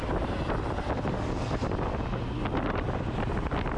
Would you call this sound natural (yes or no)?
yes